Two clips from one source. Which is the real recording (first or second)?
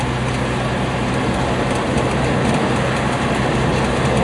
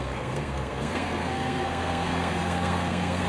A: first